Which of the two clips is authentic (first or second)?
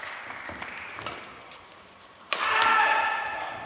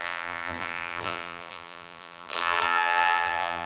first